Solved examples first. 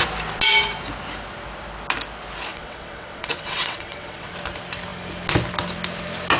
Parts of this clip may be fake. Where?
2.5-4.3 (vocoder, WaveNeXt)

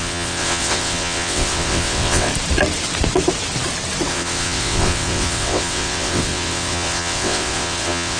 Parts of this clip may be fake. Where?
0.0-2.3 (vocoder, WaveNeXt); 4.1-8.2